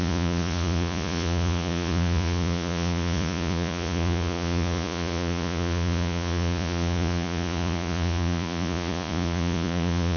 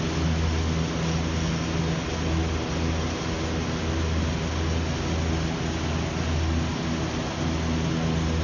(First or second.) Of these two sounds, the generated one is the first